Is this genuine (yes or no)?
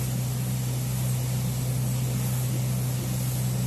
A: yes